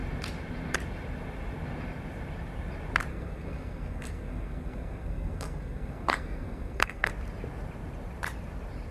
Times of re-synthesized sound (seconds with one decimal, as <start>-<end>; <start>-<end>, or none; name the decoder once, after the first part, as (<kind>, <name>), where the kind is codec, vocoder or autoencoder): 3.1-7.1 (codec, SNAC)